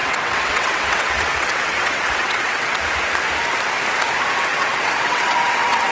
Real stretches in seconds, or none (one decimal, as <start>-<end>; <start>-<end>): 2.8-4.5